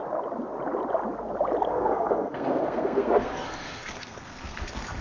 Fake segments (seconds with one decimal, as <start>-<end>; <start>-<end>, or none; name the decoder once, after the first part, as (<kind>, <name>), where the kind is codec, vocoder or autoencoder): 1.7-5.0 (codec, SNAC)